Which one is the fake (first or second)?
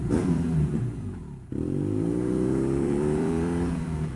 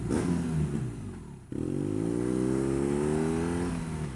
first